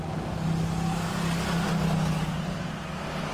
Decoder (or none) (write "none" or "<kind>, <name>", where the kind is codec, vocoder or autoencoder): none